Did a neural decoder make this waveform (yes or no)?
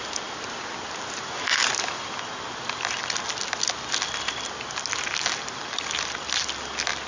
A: no